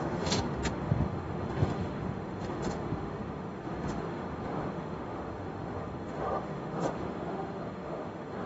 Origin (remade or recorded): remade